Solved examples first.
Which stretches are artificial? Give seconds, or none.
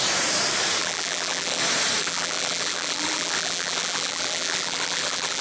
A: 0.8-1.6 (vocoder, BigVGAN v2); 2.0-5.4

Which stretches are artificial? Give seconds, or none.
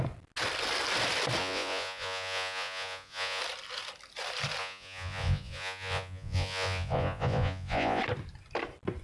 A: 1.4-3.4 (vocoder, Vocos); 4.6-8.0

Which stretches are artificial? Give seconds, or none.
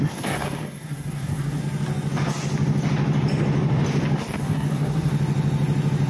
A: 0.0-1.6 (codec, SNAC); 4.4-5.1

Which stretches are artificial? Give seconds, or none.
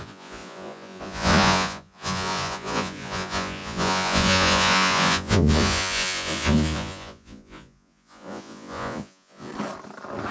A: 0.0-9.5 (vocoder, Vocos)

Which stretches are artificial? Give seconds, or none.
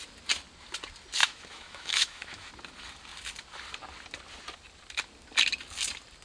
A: 1.2-2.5 (autoencoder, DAC-VAE)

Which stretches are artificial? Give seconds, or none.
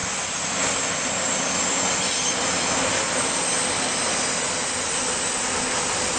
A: none